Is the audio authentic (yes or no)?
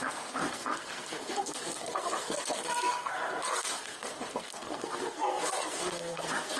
no